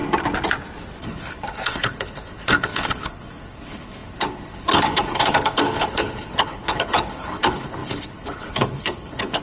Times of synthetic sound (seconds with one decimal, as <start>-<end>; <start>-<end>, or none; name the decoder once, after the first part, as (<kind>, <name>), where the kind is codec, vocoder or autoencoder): 1.0-9.4 (codec, HILCodec)

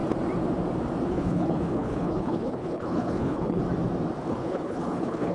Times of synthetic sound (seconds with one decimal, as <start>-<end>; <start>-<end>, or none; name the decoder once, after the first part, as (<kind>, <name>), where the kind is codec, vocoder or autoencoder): 1.1-3.6 (codec, HILCodec); 4.3-5.3

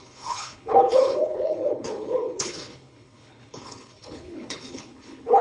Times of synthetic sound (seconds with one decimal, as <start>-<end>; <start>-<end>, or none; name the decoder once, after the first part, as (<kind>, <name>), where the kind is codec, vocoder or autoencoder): 0.0-5.4 (codec, HILCodec)

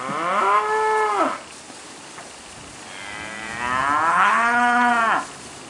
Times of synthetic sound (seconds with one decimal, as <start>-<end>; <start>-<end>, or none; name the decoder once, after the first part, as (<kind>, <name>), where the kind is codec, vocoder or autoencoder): 4.1-4.9 (codec, HILCodec)